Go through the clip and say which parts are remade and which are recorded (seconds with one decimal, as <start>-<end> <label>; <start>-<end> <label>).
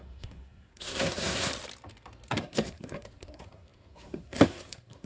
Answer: 0.0-1.5 remade; 1.5-2.3 recorded; 2.3-5.1 remade